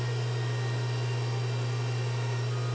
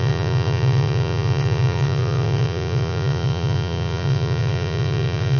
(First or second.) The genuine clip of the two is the first